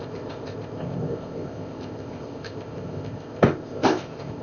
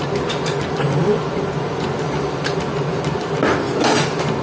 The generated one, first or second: first